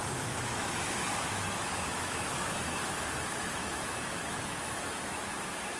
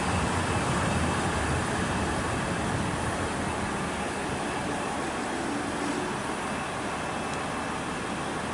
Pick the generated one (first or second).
first